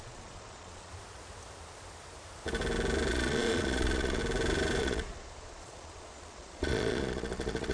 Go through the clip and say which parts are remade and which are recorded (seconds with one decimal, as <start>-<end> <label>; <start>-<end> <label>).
0.0-0.9 remade; 0.9-3.1 recorded; 3.1-4.2 remade; 4.2-4.8 recorded; 4.8-7.7 remade

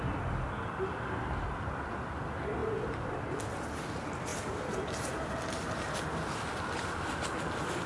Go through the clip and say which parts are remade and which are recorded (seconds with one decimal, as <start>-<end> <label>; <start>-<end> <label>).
0.0-7.9 recorded

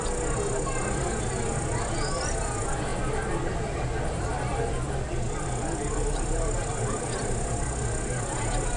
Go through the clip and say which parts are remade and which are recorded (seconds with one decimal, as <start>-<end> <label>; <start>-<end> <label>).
0.0-8.8 recorded